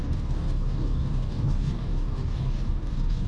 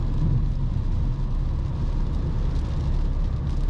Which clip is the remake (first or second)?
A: first